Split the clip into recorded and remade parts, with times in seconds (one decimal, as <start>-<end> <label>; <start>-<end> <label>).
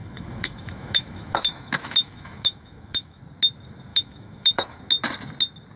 0.0-3.2 remade; 3.2-3.9 recorded; 3.9-4.8 remade; 4.8-5.8 recorded